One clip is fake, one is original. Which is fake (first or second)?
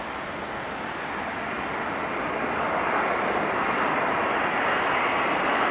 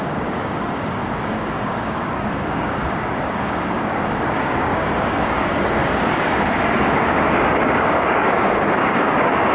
second